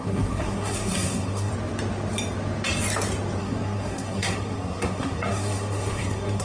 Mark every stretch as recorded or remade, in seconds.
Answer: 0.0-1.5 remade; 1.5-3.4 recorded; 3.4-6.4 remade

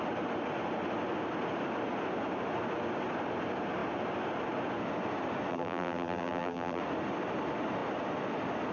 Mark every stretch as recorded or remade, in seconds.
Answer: 0.0-5.5 recorded; 5.5-6.8 remade; 6.8-8.7 recorded

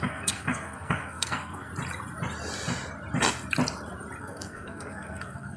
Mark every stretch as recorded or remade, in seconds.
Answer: 0.0-1.7 remade; 1.7-4.2 recorded; 4.2-5.6 remade

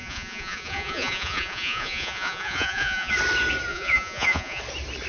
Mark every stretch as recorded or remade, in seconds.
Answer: 0.0-3.1 remade; 3.1-3.7 recorded; 3.7-4.6 remade; 4.6-5.1 recorded

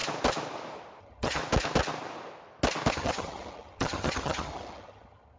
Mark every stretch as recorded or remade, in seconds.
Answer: 0.0-1.0 recorded; 1.0-1.4 remade; 1.4-2.9 recorded; 2.9-5.4 remade

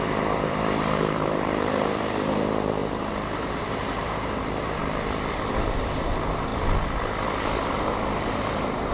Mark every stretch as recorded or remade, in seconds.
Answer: 0.0-4.8 remade; 4.8-5.5 recorded; 5.5-6.5 remade; 6.5-7.6 recorded; 7.6-8.9 remade

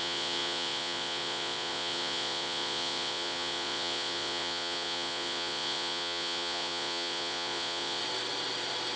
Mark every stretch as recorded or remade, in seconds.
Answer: 0.0-8.0 remade; 8.0-9.0 recorded

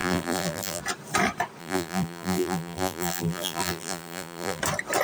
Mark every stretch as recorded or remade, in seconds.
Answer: 0.0-0.8 remade; 0.8-1.6 recorded; 1.6-4.6 remade; 4.6-5.0 recorded